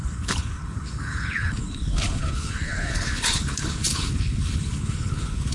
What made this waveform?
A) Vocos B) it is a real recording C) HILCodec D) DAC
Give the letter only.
C